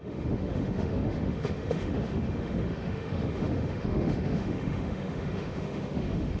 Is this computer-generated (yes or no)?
yes